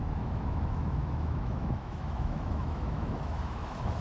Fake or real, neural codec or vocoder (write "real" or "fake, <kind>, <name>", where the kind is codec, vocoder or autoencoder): fake, autoencoder, DAC-VAE